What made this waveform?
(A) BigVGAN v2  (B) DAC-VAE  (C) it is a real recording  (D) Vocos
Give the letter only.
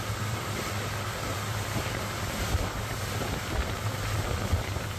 A